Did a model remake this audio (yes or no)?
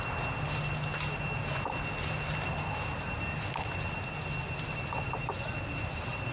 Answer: no